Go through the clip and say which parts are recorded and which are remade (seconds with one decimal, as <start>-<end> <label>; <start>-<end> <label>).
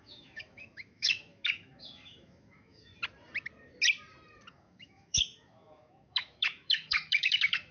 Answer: 0.0-2.9 remade; 2.9-4.5 recorded; 4.5-7.7 remade